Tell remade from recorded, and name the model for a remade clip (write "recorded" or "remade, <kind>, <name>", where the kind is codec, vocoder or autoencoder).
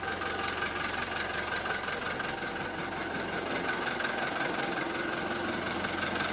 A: recorded